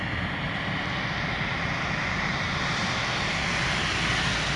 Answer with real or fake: real